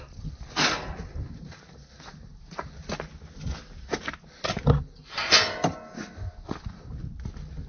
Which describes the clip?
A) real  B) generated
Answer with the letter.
A